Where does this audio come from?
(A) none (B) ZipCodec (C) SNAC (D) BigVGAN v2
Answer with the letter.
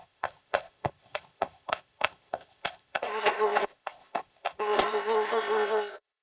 B